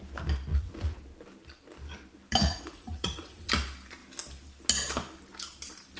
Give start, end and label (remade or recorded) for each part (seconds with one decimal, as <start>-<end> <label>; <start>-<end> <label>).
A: 0.0-0.5 recorded; 0.5-1.0 remade; 1.0-2.4 recorded; 2.4-3.5 remade; 3.5-6.0 recorded